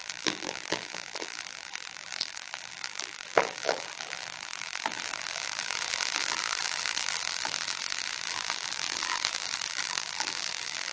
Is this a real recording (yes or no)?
no